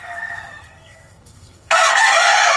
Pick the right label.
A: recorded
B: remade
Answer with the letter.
B